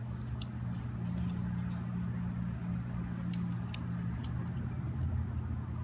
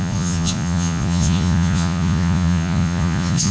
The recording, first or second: first